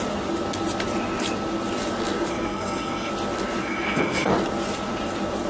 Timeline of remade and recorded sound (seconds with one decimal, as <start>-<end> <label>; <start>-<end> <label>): 0.0-2.3 recorded; 2.3-3.1 remade; 3.1-3.6 recorded; 3.6-4.3 remade; 4.3-5.5 recorded